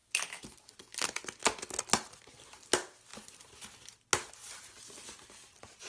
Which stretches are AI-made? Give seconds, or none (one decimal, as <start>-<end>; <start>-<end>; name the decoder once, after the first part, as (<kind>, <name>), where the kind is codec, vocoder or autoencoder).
none